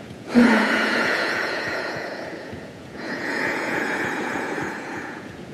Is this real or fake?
fake